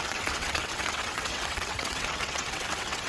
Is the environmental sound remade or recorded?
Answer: remade